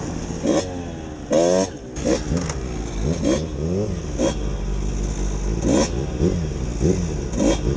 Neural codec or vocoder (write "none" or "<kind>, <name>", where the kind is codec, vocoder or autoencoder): none